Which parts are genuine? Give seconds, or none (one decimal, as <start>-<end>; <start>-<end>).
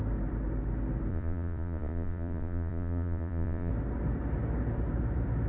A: 0.0-1.1; 3.7-5.5